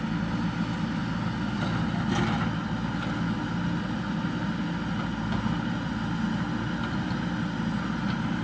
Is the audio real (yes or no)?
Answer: yes